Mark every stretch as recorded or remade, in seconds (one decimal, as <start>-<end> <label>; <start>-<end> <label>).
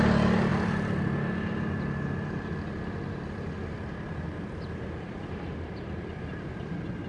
0.0-7.1 recorded